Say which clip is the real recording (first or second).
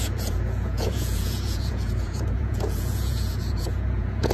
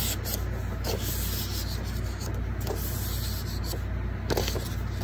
second